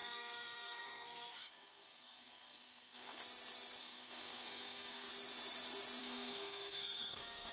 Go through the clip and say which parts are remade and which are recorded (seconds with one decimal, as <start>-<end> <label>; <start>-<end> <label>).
0.0-3.2 remade; 3.2-3.8 recorded; 3.8-5.1 remade; 5.1-6.0 recorded; 6.0-7.5 remade